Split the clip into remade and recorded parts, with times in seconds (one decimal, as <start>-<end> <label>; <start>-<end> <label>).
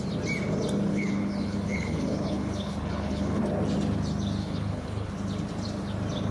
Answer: 0.0-0.9 recorded; 0.9-3.4 remade; 3.4-4.4 recorded; 4.4-5.1 remade; 5.1-6.3 recorded